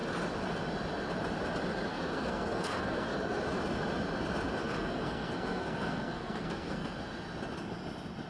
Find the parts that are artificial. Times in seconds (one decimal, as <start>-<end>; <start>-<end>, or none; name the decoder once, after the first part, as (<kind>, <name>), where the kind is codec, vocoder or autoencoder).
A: 1.9-3.4 (codec, SNAC); 4.6-7.0